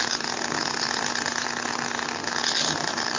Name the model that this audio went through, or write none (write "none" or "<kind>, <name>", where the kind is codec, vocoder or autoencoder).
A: none